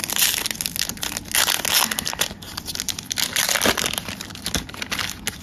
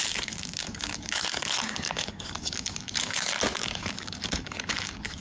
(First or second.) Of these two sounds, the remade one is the second